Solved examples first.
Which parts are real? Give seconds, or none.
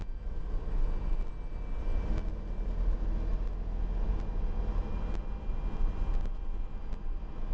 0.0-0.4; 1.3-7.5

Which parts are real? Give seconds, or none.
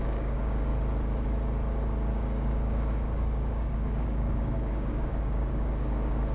0.7-2.1